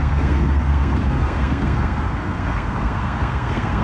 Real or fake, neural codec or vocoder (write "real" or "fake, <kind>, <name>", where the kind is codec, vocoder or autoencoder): fake, codec, SNAC